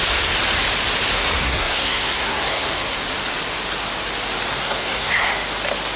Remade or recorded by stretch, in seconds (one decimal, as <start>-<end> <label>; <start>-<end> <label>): 0.0-1.4 recorded; 1.4-3.0 remade; 3.0-4.6 recorded; 4.6-5.3 remade; 5.3-6.0 recorded